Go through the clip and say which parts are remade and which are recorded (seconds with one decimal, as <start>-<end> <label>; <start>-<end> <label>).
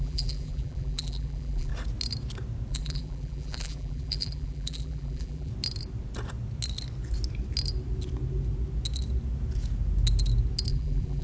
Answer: 0.0-1.7 remade; 1.7-2.7 recorded; 2.7-5.5 remade; 5.5-10.7 recorded; 10.7-11.2 remade